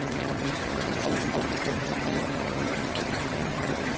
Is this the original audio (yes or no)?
no